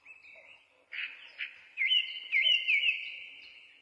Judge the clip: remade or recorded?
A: recorded